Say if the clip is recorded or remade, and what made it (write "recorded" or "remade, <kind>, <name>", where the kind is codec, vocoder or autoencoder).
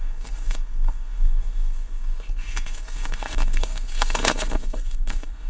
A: remade, codec, SNAC